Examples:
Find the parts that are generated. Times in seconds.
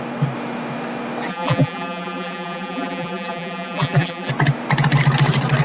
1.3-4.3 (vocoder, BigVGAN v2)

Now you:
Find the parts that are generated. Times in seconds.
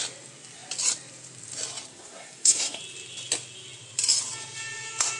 1.9-2.8 (codec, SNAC)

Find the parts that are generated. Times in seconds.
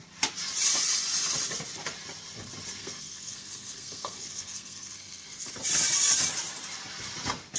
2.8-5.5 (codec, SNAC)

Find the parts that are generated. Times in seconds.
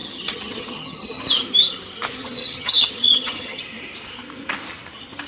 0.0-1.2 (vocoder, HiFi-GAN); 2.2-3.6